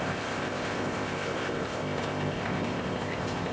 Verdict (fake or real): fake